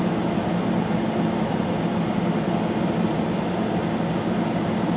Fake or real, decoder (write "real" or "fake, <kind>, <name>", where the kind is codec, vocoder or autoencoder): real